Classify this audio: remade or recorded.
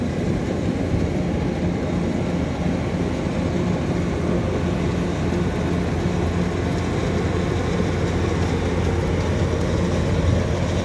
recorded